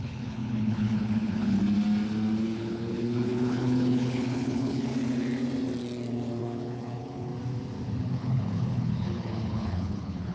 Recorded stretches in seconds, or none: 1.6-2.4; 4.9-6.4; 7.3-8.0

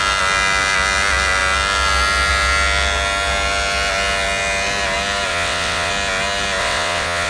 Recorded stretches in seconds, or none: 0.0-5.3; 5.9-6.6